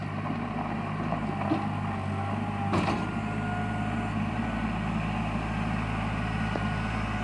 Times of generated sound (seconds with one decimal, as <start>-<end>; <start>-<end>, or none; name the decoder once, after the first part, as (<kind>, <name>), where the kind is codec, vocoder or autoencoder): none